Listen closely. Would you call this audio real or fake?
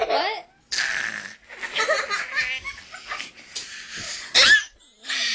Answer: real